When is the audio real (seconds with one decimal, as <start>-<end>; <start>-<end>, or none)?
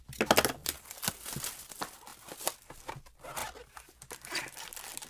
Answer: 0.0-0.6; 1.1-5.1